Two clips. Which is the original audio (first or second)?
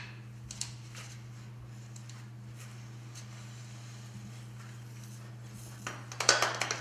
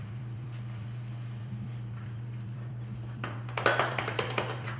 first